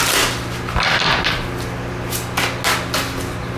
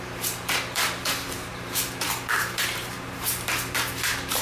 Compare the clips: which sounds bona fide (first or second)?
first